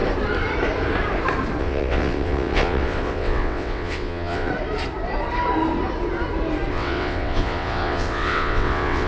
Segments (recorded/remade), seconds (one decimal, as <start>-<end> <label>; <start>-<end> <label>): 0.0-1.6 recorded; 1.6-4.5 remade; 4.5-6.7 recorded; 6.7-9.1 remade